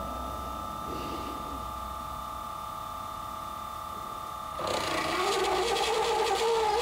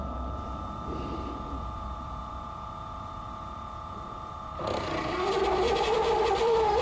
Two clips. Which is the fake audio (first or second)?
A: second